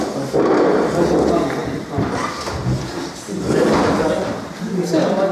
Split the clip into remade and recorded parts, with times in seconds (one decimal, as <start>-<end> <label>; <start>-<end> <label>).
0.0-1.6 recorded; 1.6-4.6 remade; 4.6-5.3 recorded